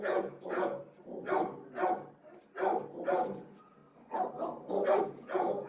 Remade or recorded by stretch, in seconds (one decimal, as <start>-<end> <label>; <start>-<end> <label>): 0.0-0.8 remade; 0.8-3.1 recorded; 3.1-3.8 remade; 3.8-5.0 recorded; 5.0-5.7 remade